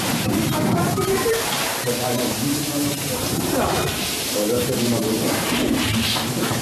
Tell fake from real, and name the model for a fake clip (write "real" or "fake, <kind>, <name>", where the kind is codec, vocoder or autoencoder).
fake, vocoder, BigVGAN v2